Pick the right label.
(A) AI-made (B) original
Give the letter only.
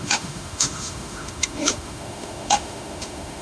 A